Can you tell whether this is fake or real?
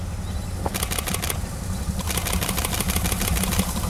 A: real